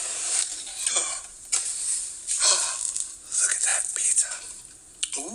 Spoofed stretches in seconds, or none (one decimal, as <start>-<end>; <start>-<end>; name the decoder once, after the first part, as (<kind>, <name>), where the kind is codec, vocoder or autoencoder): 1.0-1.8 (vocoder, BigVGAN v2); 3.7-4.6